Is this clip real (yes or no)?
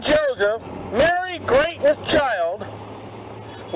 yes